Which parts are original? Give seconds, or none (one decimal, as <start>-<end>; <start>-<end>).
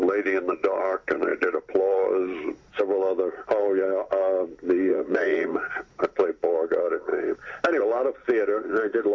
0.0-4.9; 6.0-9.1